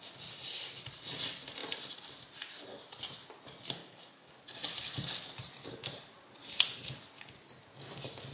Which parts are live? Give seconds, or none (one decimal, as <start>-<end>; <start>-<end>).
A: 0.0-3.8; 4.3-8.3